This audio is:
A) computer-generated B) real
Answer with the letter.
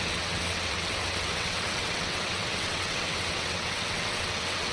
A